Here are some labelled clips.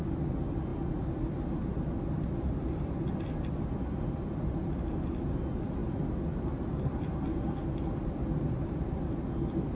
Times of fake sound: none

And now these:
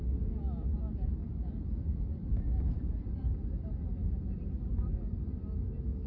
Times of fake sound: 1.2-3.2 (vocoder, BigVGAN v2)

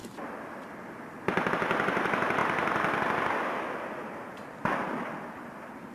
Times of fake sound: none

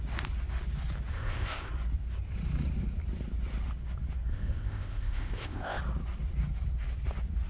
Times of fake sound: 1.1-1.7 (codec, ZipCodec); 4.3-5.8

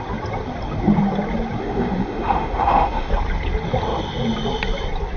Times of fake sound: 1.6-3.1 (autoencoder, DAC-VAE)